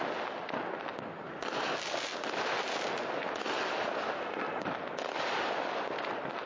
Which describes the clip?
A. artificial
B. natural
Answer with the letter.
B